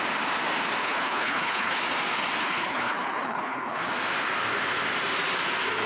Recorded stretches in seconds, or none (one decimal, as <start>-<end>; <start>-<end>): 0.0-0.8; 1.8-2.4; 3.9-5.9